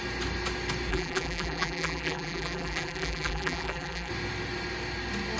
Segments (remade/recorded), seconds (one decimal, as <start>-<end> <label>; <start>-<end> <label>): 0.0-0.9 recorded; 0.9-4.1 remade; 4.1-5.4 recorded